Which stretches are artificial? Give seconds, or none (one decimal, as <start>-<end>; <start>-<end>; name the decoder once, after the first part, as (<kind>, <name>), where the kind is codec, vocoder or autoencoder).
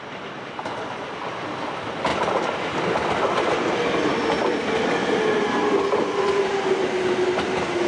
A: none